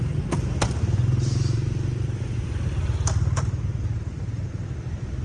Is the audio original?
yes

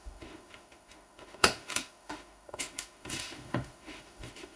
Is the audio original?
no